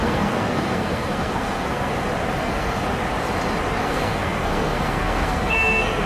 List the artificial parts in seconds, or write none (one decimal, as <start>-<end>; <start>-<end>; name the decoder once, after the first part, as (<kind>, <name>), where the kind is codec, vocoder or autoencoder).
0.0-1.9 (codec, SNAC); 2.4-2.8; 3.8-6.1